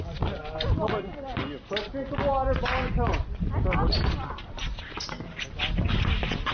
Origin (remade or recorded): recorded